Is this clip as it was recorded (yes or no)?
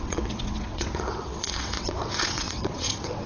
no